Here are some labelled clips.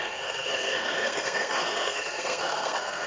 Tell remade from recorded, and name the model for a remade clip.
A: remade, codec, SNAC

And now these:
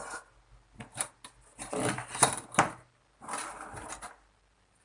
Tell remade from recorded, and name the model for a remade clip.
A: recorded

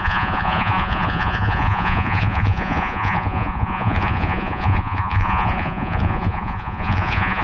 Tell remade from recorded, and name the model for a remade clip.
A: remade, vocoder, Vocos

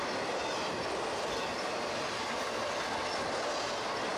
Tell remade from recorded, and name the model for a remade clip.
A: recorded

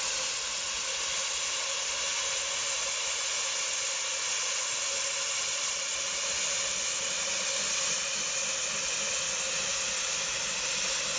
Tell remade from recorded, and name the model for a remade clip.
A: recorded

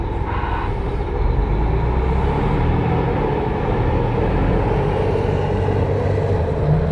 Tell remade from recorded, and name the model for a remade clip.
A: recorded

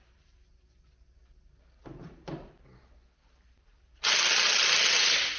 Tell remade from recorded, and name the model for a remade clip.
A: recorded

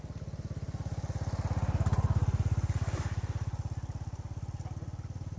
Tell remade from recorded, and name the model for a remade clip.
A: recorded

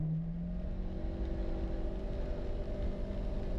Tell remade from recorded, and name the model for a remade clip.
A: recorded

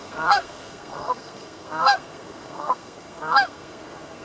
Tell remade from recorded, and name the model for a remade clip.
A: remade, codec, SNAC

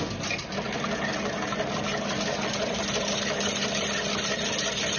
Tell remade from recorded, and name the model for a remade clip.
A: recorded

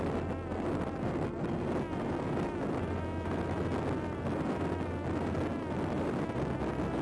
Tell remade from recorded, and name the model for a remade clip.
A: recorded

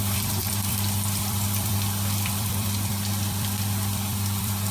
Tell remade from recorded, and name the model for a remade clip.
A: remade, vocoder, BigVGAN v2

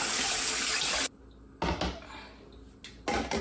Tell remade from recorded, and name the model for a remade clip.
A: recorded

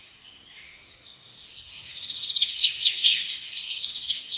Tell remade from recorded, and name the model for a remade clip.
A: remade, codec, SNAC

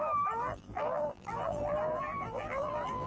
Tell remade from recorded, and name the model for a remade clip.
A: remade, vocoder, BigVGAN v2